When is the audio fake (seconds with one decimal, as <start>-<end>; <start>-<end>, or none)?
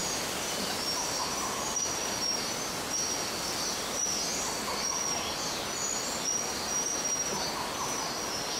0.0-1.2; 4.3-5.3